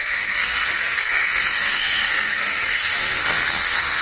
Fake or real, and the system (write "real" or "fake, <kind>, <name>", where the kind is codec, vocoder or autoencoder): fake, codec, SNAC